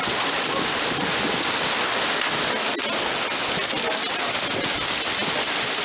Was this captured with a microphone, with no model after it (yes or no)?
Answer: yes